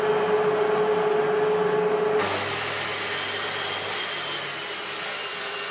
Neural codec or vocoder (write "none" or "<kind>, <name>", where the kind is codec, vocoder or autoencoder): none